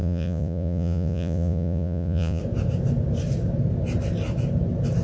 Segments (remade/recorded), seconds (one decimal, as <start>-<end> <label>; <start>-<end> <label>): 0.0-2.4 remade; 2.4-5.0 recorded